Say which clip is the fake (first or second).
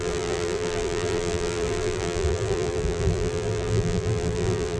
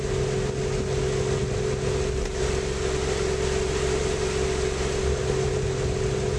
first